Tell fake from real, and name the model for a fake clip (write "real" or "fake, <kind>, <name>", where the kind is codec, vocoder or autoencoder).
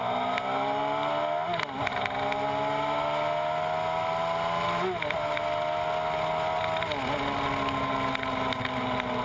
real